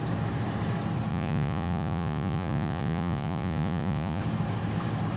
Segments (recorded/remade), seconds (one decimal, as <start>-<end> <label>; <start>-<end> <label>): 0.0-1.1 recorded; 1.1-4.2 remade; 4.2-5.2 recorded